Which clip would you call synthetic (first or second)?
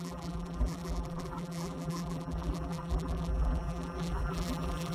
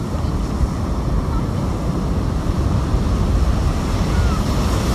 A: first